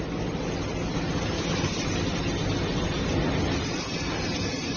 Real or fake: real